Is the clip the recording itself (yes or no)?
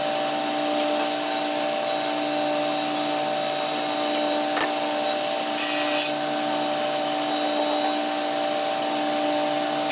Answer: yes